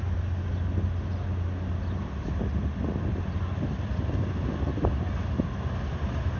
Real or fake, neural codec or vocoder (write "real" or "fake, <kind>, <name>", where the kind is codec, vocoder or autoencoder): real